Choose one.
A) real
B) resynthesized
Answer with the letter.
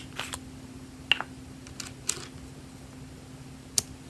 A